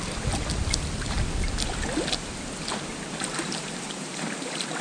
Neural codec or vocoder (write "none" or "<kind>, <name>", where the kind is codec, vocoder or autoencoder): none